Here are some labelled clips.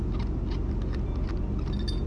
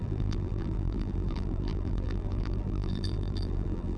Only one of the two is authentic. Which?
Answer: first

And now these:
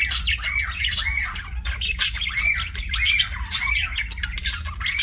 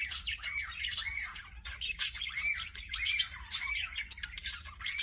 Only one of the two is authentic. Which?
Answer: first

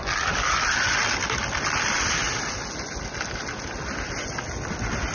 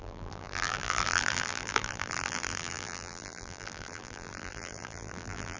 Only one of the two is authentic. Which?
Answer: first